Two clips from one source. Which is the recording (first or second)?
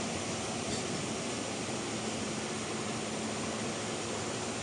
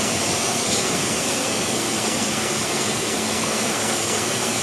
first